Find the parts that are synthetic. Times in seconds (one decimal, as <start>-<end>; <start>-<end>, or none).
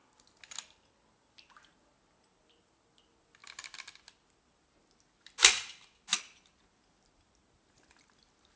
none